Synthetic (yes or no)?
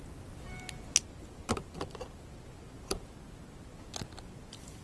no